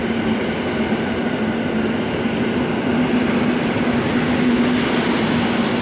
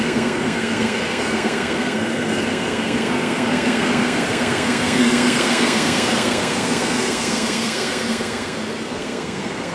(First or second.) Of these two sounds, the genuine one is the first